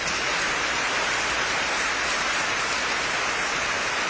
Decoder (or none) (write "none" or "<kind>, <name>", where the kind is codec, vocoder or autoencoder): none